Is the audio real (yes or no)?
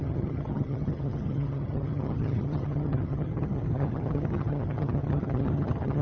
no